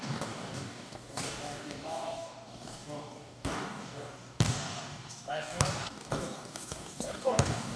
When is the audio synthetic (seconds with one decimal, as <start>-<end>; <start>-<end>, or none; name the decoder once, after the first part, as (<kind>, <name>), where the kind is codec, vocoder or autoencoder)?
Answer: 0.0-7.8 (codec, DAC)